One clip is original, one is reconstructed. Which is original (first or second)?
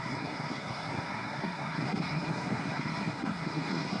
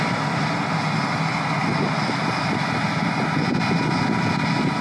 second